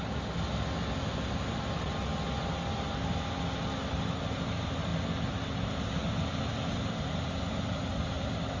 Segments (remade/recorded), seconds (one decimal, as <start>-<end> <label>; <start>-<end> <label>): 0.0-8.6 recorded